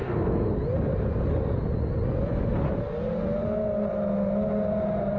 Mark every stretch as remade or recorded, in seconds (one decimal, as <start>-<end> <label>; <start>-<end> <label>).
0.0-0.6 remade; 0.6-5.2 recorded